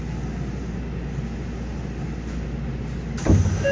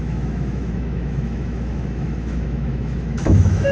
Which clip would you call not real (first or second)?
second